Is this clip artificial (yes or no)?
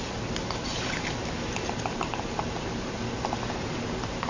no